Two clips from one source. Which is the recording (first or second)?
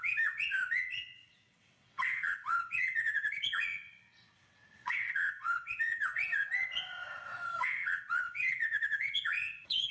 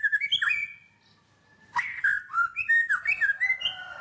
second